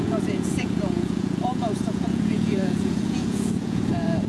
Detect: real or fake fake